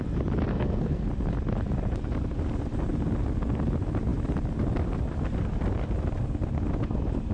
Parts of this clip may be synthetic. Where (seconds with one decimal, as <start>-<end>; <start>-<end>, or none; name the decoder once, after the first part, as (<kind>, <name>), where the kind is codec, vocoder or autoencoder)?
0.5-1.1 (codec, SNAC)